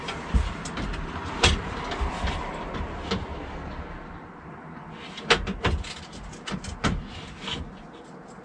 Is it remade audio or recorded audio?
recorded